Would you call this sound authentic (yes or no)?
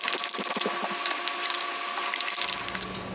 yes